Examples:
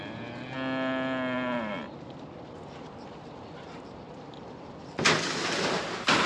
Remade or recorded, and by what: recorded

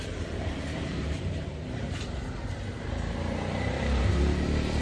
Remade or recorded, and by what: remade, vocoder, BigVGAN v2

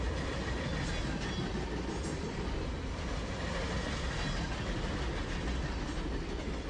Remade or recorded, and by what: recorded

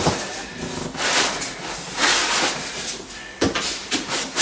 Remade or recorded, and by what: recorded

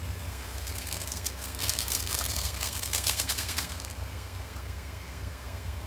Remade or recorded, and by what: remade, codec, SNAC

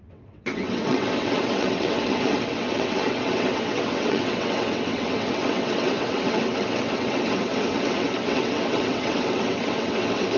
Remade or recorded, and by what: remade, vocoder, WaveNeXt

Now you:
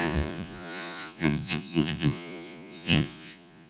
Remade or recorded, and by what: remade, vocoder, Vocos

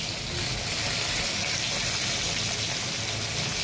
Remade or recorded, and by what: recorded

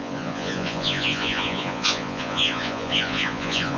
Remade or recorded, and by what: remade, vocoder, Vocos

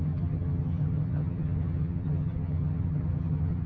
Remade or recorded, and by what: remade, vocoder, HiFi-GAN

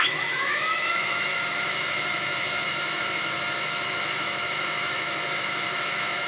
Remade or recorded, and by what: remade, autoencoder, DAC-VAE